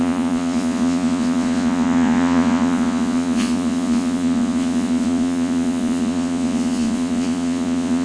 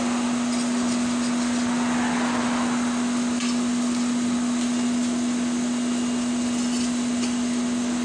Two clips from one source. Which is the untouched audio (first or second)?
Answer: second